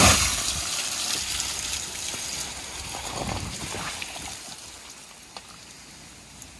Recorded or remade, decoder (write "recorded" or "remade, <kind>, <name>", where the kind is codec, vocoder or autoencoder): recorded